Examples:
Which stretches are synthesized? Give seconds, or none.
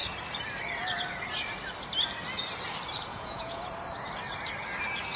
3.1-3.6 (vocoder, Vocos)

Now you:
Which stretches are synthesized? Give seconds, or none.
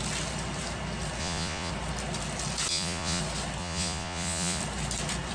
1.2-1.7 (vocoder, Vocos); 2.7-3.2; 3.6-4.6